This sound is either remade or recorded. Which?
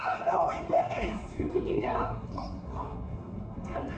remade